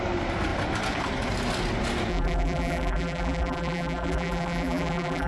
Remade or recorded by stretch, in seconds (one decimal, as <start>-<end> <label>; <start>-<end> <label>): 0.0-2.1 recorded; 2.1-5.3 remade